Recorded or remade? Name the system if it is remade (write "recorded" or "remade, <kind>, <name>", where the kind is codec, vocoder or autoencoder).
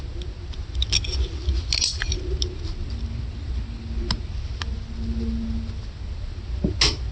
recorded